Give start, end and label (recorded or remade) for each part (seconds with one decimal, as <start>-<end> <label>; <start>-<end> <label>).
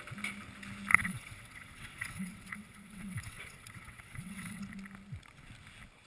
0.0-0.9 recorded; 0.9-4.6 remade; 4.6-6.1 recorded